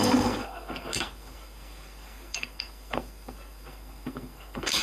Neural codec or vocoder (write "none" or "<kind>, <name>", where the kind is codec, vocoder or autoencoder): codec, SNAC